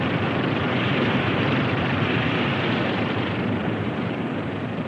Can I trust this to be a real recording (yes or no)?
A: no